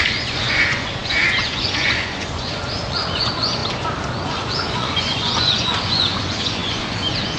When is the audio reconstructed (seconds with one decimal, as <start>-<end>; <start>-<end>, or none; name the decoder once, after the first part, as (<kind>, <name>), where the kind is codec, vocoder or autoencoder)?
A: 0.0-3.6 (vocoder, Vocos); 4.1-7.4